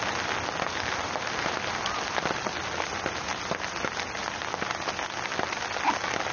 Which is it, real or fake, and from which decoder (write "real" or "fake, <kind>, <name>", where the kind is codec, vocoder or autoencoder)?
real